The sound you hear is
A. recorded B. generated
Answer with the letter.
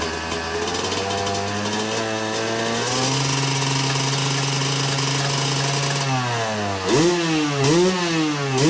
A